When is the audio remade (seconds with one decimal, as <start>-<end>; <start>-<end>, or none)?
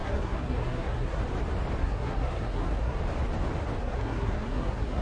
0.0-1.2; 1.8-3.0; 3.8-5.0